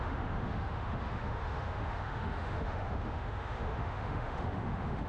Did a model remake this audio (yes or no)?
yes